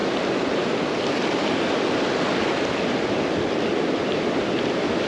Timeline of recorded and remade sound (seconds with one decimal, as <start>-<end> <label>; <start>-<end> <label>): 0.0-5.1 recorded